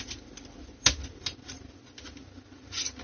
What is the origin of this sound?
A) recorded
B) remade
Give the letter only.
A